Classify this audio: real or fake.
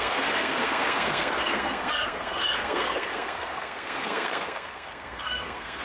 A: fake